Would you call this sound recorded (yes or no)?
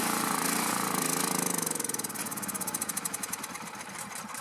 no